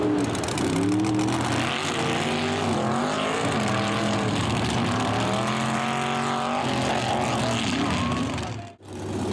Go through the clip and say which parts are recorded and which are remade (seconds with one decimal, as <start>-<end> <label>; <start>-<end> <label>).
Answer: 0.0-9.3 recorded